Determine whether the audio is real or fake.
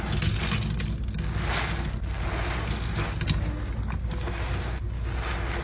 real